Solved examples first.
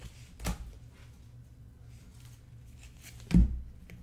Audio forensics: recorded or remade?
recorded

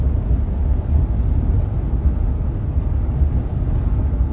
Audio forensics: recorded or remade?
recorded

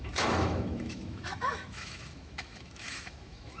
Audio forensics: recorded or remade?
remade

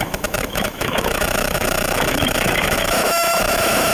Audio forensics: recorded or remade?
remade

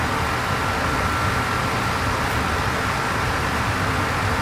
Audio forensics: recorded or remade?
recorded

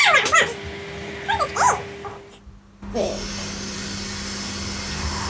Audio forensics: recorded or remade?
recorded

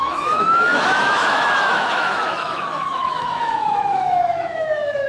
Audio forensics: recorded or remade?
remade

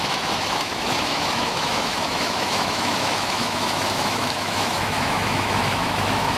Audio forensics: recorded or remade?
remade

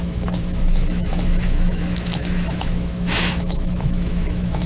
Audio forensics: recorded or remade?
remade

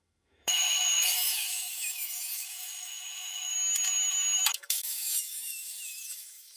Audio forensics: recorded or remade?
remade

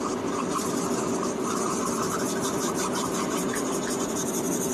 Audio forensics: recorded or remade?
recorded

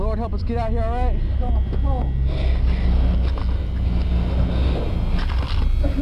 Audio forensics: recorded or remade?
recorded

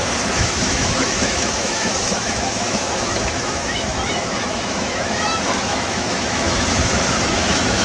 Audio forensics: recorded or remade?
remade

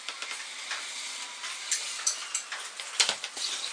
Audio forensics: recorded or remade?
recorded